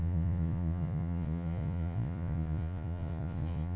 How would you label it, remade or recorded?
remade